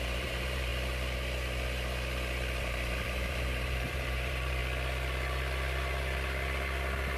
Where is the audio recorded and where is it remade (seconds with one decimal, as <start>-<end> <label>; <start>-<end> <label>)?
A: 0.0-0.7 remade; 0.7-2.6 recorded; 2.6-4.6 remade; 4.6-7.2 recorded